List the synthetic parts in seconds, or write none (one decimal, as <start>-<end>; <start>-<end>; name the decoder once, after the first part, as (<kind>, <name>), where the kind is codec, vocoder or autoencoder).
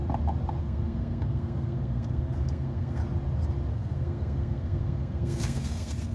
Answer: 0.6-3.0 (codec, SNAC); 3.7-6.1